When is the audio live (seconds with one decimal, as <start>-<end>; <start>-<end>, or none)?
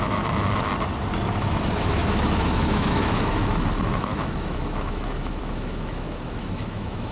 0.7-1.4